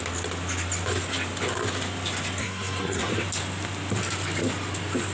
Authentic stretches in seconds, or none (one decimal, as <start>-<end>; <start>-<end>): 0.0-2.4; 3.1-5.1